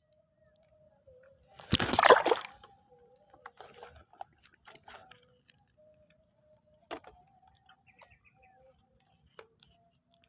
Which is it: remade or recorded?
recorded